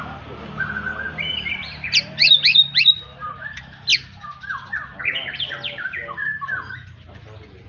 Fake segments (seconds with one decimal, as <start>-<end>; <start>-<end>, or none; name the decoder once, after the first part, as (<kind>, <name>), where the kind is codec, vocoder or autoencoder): none